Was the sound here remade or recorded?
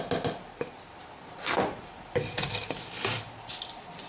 recorded